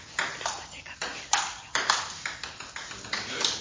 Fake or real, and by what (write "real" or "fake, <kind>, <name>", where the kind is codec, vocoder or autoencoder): real